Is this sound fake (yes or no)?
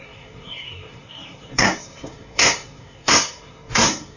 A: yes